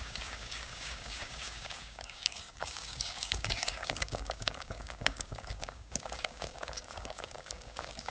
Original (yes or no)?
no